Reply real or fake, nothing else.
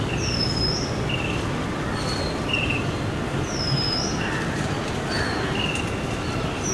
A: real